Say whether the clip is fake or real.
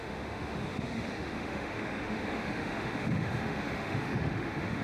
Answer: fake